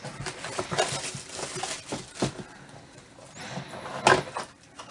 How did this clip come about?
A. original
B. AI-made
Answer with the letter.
A